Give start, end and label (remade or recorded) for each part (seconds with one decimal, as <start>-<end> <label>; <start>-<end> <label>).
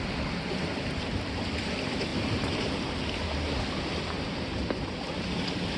0.0-2.1 remade; 2.1-3.1 recorded; 3.1-5.8 remade